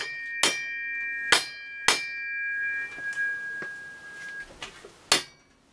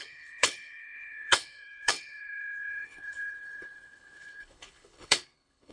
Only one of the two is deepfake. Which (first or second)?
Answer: second